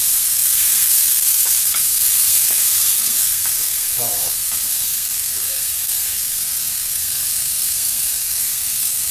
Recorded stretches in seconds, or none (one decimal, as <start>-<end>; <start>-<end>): none